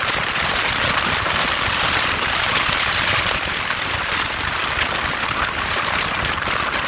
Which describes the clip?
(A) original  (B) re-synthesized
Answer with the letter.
A